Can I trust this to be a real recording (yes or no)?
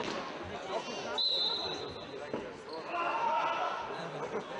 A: yes